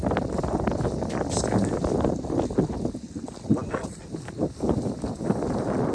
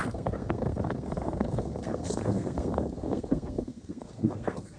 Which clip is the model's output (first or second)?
second